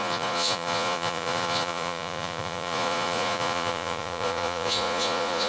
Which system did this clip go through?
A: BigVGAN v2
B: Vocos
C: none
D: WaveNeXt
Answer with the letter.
B